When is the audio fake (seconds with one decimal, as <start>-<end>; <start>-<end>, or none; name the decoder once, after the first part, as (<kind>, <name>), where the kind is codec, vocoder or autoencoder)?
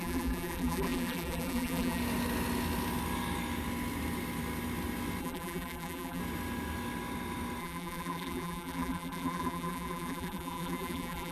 0.0-2.0 (vocoder, BigVGAN v2); 5.2-6.2; 7.6-11.3